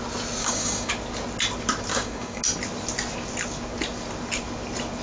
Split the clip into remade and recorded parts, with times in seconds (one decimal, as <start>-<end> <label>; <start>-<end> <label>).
0.0-0.4 recorded; 0.4-0.9 remade; 0.9-1.9 recorded; 1.9-2.4 remade; 2.4-5.0 recorded